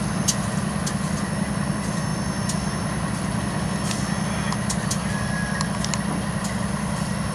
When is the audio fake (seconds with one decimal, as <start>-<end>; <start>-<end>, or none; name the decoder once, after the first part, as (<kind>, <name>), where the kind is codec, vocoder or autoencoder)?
none